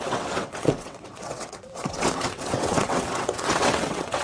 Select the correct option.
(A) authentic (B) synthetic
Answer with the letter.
B